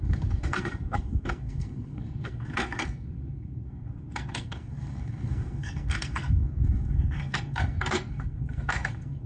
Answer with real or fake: fake